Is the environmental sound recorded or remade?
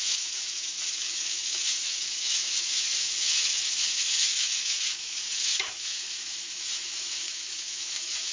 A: remade